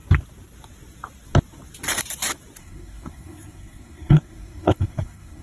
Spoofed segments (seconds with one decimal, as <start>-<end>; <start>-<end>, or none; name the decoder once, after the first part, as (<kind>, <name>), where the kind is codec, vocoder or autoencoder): 2.6-5.4 (codec, SNAC)